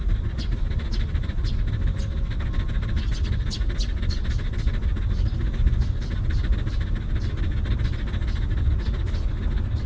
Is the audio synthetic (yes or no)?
no